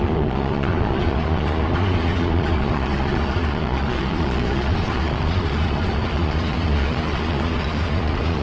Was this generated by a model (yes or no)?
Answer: yes